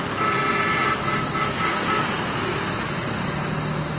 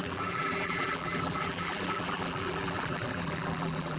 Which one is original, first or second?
first